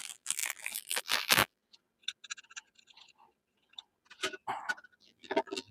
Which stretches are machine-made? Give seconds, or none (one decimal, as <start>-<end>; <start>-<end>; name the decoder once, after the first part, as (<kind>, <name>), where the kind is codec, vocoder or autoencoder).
0.0-1.6 (vocoder, BigVGAN v2); 5.0-5.7